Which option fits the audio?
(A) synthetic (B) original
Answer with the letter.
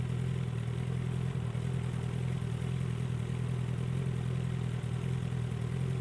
B